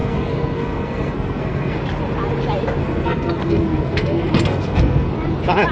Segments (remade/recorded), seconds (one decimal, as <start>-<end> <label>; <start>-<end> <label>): 0.0-1.8 remade; 1.8-2.8 recorded; 2.8-5.1 remade; 5.1-5.7 recorded